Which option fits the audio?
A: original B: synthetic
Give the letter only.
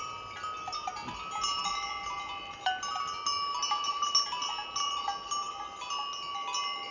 A